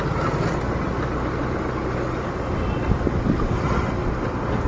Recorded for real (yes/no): yes